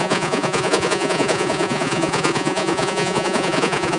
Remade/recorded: remade